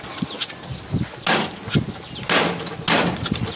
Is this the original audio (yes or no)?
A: yes